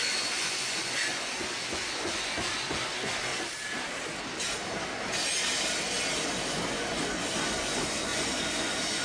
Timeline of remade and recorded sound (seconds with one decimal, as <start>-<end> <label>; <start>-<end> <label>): 0.0-3.3 remade; 3.3-6.5 recorded; 6.5-9.0 remade